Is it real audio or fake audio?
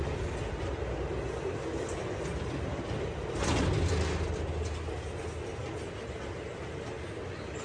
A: real